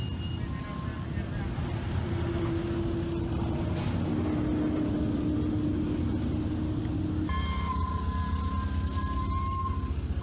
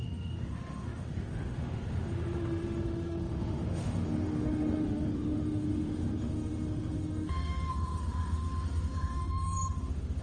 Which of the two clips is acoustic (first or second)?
first